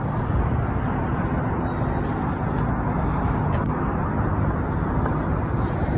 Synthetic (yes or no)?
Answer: no